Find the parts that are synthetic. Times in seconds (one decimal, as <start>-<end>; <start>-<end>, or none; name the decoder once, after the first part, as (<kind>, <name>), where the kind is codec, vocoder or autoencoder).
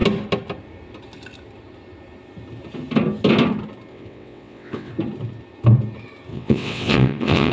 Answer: 3.9-4.9 (vocoder, WaveNeXt); 6.3-7.5